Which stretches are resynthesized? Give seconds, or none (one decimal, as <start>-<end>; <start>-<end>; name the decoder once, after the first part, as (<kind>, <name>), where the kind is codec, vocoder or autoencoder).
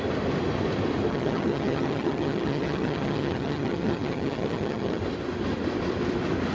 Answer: 1.1-5.0 (vocoder, HiFi-GAN)